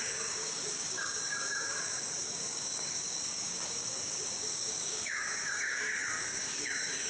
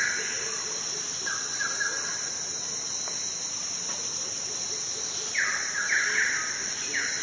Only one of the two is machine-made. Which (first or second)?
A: first